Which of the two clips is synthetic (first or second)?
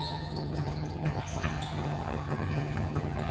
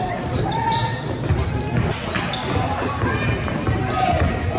first